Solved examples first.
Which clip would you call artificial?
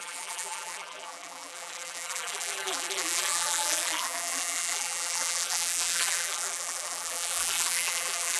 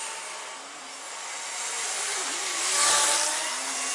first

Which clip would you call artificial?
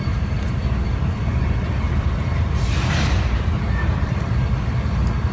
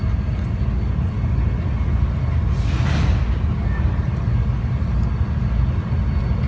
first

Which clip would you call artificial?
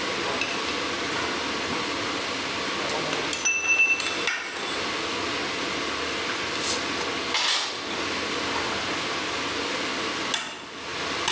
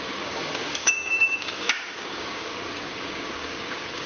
second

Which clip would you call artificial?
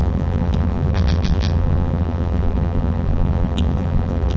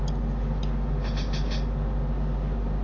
first